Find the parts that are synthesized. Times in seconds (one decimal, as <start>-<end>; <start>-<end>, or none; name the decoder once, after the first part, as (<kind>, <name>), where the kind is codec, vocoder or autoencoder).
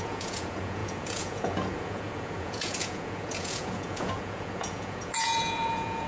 0.0-6.1 (vocoder, Vocos)